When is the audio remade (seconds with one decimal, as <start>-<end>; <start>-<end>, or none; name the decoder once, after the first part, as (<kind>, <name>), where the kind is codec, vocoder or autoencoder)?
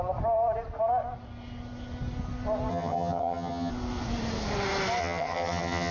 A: 2.7-3.7 (vocoder, HiFi-GAN); 5.0-5.9